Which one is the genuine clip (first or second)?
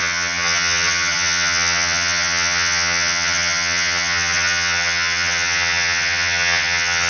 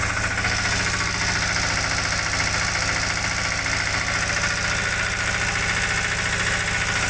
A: second